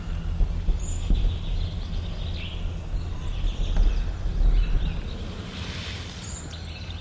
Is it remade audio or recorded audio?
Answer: recorded